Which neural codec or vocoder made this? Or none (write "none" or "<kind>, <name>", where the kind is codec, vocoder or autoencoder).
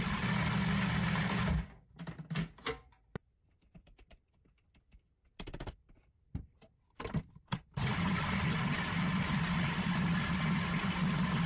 none